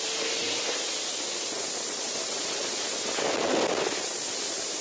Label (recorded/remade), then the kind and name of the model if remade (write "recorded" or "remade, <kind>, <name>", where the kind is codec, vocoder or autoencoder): recorded